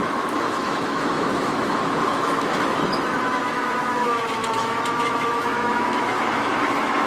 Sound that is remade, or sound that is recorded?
remade